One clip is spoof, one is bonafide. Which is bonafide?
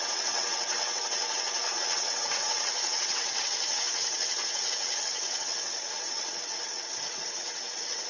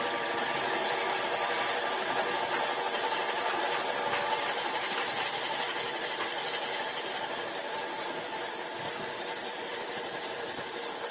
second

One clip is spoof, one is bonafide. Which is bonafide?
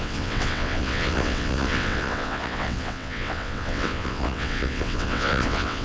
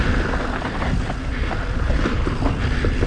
second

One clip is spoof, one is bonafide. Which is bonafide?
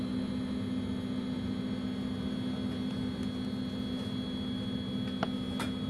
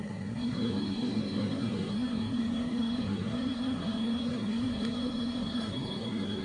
first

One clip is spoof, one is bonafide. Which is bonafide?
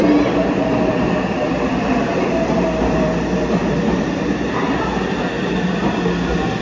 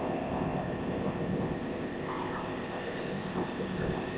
first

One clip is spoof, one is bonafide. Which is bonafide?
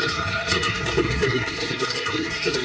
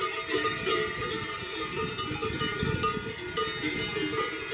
second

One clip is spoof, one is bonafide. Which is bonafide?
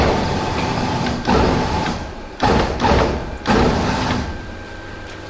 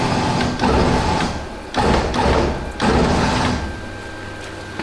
second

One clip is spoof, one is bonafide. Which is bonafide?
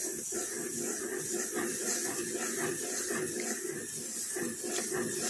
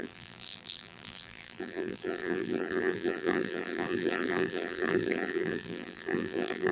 first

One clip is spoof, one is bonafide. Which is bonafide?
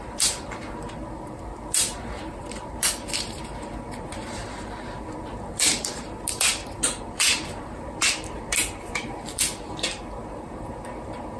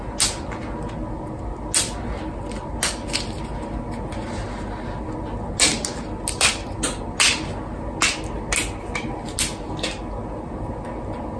second